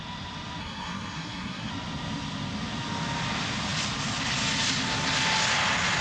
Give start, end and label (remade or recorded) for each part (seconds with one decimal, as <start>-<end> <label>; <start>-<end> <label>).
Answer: 0.0-0.6 recorded; 0.6-1.7 remade; 1.7-6.0 recorded